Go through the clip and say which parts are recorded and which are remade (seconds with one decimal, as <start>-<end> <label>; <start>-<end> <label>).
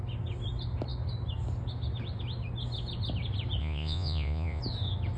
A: 0.0-3.6 recorded; 3.6-4.6 remade; 4.6-5.2 recorded